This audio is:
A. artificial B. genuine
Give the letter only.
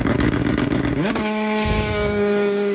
A